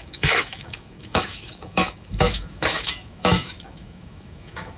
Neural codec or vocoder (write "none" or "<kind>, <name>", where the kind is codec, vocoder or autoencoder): autoencoder, DAC-VAE